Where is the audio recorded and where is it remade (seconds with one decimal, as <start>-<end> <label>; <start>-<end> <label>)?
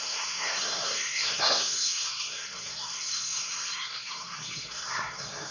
0.0-5.5 remade